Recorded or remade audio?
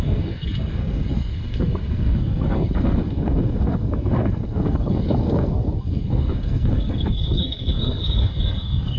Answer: remade